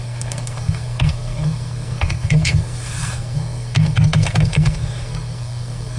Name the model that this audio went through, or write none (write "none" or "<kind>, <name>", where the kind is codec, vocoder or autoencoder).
codec, SNAC